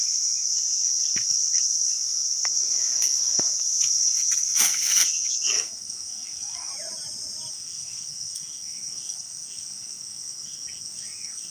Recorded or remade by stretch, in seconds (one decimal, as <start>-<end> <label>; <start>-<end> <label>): 0.0-6.7 remade; 6.7-7.5 recorded; 7.5-11.5 remade